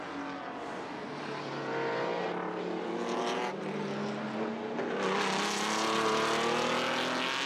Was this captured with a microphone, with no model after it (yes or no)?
yes